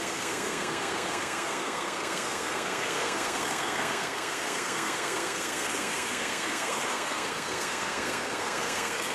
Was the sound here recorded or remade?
remade